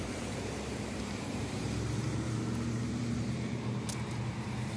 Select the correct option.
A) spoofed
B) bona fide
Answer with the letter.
A